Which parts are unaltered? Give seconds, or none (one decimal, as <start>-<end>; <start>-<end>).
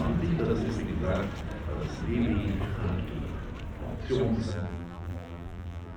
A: 0.0-4.5